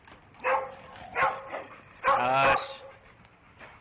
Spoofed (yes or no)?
no